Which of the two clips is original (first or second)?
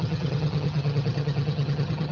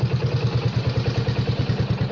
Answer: second